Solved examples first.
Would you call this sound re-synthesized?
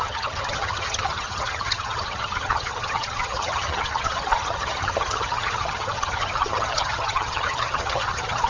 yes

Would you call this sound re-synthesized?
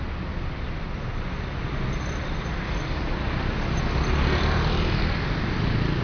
no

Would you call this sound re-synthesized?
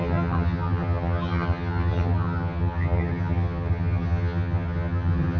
yes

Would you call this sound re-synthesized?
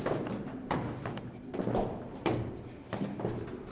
no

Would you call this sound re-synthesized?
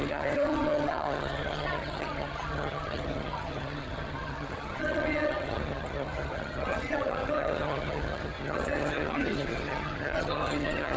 yes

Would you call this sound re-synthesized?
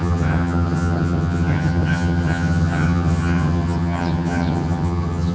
yes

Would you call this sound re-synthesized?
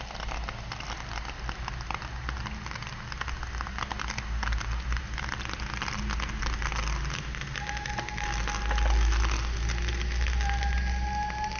no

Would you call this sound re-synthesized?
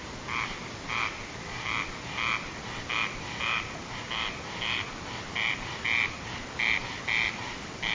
no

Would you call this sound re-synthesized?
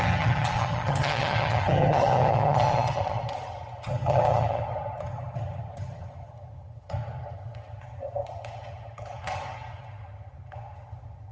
yes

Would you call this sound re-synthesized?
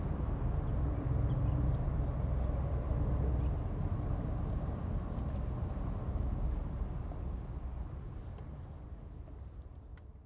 no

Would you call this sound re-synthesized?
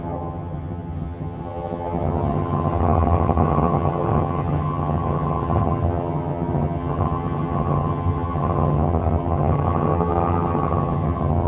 yes